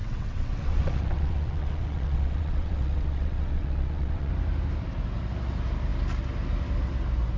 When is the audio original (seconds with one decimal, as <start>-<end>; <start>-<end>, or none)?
4.3-7.4